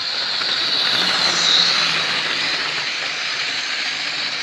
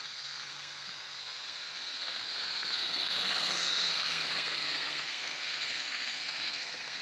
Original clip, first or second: first